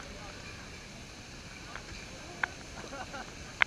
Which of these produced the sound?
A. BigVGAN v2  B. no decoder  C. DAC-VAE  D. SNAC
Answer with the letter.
B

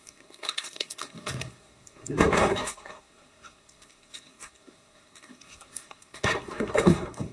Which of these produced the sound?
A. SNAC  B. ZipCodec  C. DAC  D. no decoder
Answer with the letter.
A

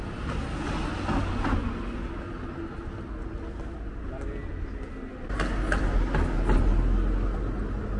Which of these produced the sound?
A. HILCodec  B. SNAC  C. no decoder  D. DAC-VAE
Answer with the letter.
C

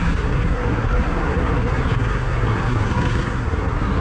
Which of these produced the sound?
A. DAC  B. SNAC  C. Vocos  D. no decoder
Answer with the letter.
B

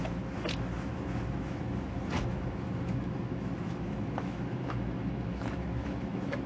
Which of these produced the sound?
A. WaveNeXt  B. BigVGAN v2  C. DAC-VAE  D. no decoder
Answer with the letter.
C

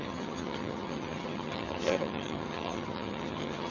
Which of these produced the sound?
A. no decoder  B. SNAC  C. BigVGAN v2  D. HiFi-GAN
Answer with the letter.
D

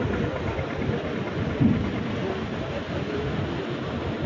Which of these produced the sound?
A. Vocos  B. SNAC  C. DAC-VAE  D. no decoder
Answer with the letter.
D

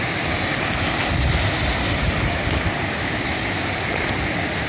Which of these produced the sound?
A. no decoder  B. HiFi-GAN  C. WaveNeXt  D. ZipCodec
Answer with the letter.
A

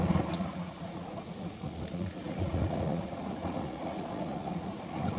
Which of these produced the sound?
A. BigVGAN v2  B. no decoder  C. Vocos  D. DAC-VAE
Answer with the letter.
C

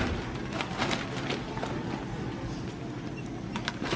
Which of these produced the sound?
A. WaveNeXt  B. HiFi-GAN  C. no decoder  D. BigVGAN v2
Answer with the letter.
C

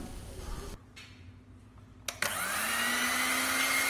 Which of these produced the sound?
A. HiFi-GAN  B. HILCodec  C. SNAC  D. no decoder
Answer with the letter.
D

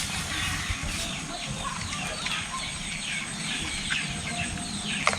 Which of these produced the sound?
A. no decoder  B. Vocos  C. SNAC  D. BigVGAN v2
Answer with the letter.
A